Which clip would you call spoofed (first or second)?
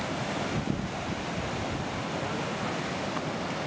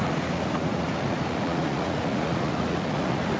second